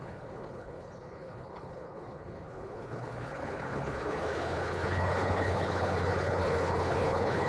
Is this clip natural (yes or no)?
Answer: no